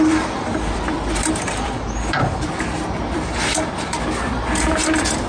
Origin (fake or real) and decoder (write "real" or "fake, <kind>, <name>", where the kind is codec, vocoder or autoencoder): fake, vocoder, BigVGAN v2